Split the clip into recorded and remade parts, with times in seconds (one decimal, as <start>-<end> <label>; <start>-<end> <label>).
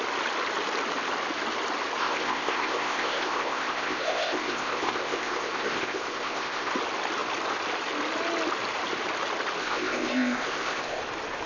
0.0-2.0 recorded; 2.0-6.7 remade; 6.7-9.6 recorded; 9.6-11.0 remade; 11.0-11.5 recorded